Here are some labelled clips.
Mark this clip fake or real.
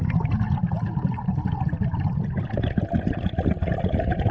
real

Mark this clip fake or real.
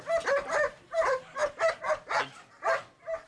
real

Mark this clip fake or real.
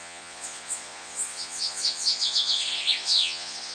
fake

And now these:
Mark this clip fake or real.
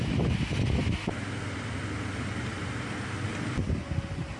real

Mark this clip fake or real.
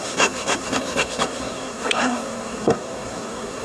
fake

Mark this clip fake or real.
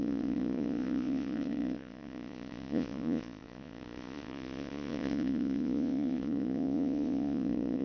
fake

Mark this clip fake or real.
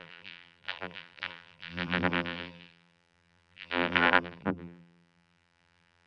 fake